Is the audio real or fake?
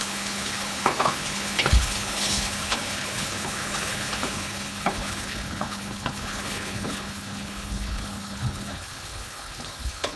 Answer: fake